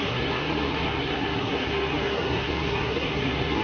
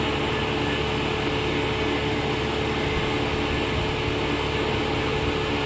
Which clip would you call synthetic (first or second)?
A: first